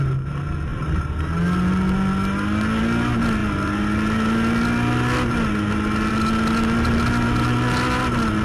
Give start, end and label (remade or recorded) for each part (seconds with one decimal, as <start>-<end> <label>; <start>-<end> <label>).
0.0-8.4 recorded